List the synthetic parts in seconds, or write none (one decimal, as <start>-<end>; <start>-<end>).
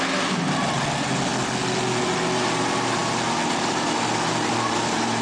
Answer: none